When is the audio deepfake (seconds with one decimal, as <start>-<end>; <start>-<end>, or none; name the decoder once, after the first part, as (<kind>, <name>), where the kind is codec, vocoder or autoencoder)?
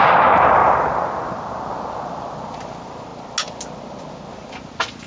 none